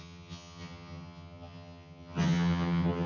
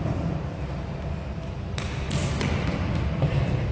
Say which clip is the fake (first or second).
first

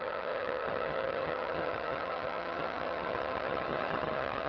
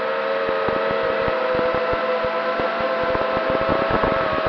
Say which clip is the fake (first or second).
first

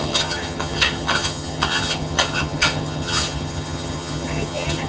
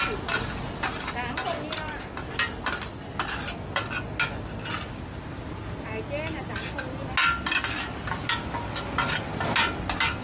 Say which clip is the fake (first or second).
first